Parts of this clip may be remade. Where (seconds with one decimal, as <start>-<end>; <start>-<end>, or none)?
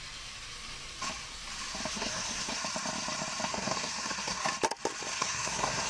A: 1.9-2.6; 3.5-4.4; 5.1-5.9